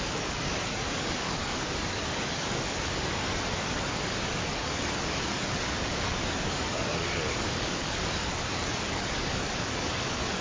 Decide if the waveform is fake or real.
fake